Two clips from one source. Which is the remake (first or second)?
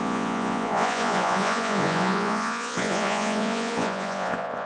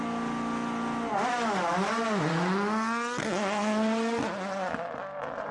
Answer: first